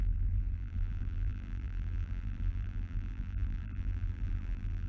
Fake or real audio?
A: fake